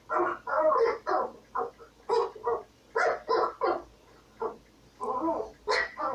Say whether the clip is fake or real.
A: real